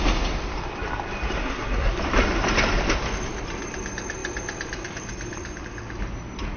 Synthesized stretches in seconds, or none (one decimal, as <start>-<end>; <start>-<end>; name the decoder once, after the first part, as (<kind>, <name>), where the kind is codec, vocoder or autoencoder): 1.4-2.0 (codec, SNAC)